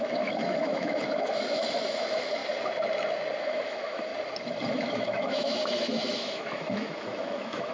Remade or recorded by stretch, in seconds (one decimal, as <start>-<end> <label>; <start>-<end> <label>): 0.0-2.4 remade; 2.4-3.4 recorded; 3.4-4.1 remade; 4.1-4.7 recorded; 4.7-7.7 remade